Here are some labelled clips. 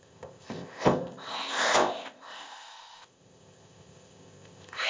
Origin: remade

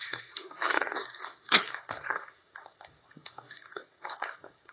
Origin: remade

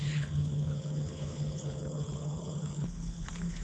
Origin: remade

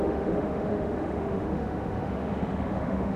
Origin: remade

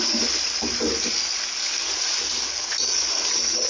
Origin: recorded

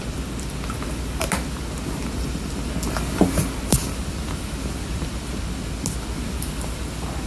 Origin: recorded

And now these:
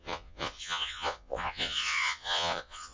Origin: remade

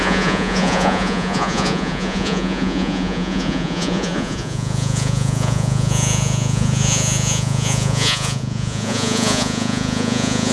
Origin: remade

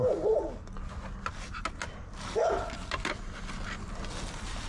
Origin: recorded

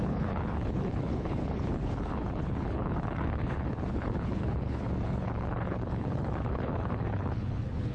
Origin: remade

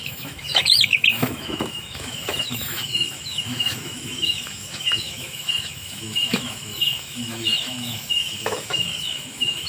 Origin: remade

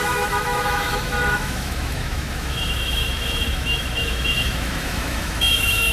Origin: remade